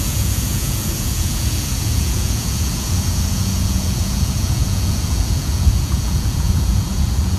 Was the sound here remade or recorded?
remade